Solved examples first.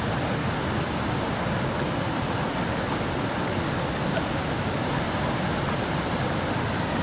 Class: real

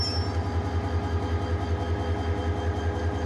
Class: real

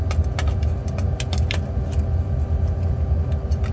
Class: real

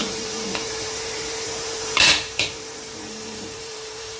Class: fake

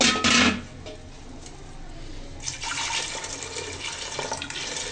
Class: real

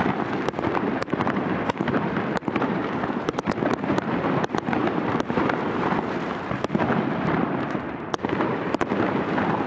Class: fake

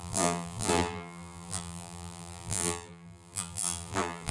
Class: fake